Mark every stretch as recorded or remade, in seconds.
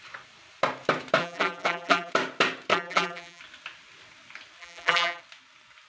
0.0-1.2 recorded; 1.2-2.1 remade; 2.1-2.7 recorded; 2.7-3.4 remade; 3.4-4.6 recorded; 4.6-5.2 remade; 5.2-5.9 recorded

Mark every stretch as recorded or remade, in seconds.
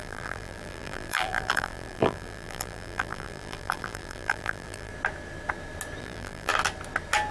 0.0-4.9 remade; 4.9-6.0 recorded; 6.0-6.5 remade; 6.5-7.3 recorded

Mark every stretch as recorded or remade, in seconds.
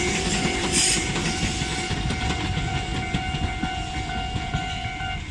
0.0-2.9 remade; 2.9-4.5 recorded; 4.5-5.3 remade